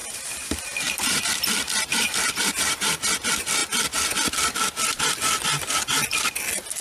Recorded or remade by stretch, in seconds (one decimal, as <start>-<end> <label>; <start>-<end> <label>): 0.0-1.2 remade; 1.2-1.9 recorded; 1.9-2.9 remade; 2.9-6.8 recorded